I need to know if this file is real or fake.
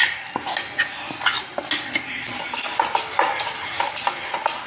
real